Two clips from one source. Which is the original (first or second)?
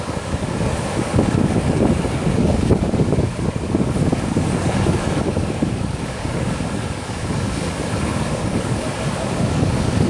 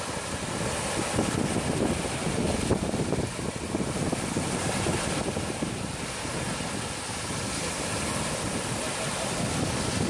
second